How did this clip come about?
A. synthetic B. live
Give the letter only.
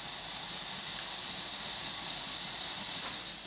B